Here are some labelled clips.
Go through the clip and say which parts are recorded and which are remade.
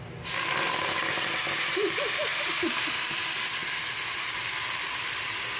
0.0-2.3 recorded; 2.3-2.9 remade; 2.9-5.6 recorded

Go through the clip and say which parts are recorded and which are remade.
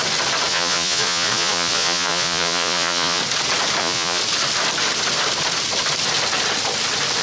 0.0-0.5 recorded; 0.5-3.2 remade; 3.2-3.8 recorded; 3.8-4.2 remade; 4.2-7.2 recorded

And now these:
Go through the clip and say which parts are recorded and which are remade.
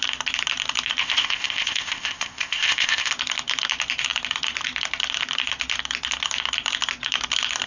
0.0-1.0 recorded; 1.0-3.1 remade; 3.1-7.7 recorded